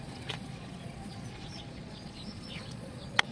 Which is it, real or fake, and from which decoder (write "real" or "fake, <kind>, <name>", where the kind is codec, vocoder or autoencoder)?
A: fake, vocoder, Vocos